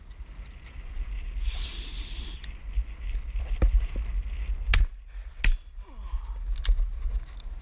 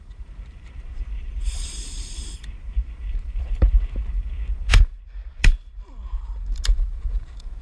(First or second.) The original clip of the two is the first